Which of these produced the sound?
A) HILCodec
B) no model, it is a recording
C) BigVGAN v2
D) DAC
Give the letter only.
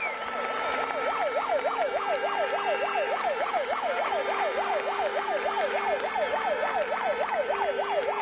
B